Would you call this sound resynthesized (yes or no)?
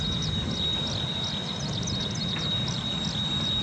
no